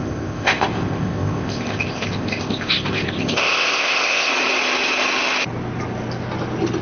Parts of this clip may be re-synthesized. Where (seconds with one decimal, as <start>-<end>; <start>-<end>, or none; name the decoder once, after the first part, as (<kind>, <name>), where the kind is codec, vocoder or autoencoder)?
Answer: 0.0-4.3 (codec, ZipCodec)